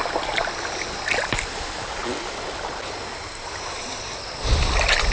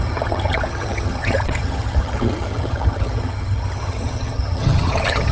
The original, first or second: first